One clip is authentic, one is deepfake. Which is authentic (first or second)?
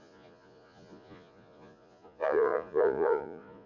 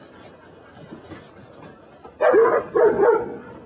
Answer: second